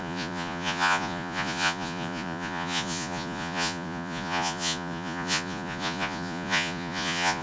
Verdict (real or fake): fake